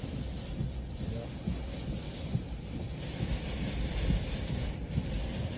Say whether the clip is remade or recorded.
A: recorded